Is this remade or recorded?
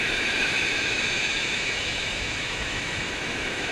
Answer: remade